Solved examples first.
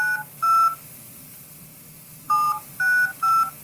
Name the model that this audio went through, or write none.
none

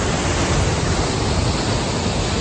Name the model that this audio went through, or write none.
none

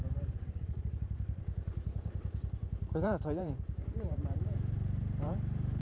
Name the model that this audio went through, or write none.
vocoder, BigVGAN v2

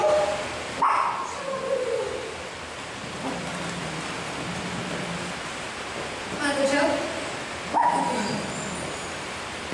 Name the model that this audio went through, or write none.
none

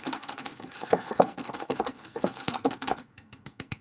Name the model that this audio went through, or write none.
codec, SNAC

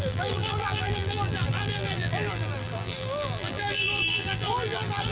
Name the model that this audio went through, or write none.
vocoder, BigVGAN v2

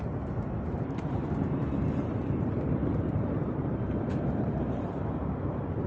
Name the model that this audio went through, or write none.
vocoder, BigVGAN v2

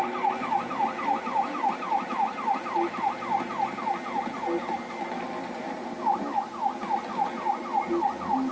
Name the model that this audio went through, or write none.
none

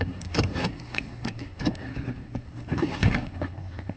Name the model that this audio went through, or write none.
codec, SNAC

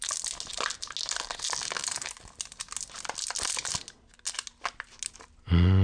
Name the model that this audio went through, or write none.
none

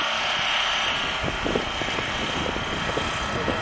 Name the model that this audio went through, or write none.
none